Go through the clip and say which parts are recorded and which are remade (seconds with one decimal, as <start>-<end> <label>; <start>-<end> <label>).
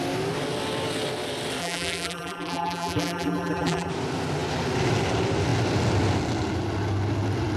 0.0-1.6 recorded; 1.6-3.9 remade; 3.9-7.6 recorded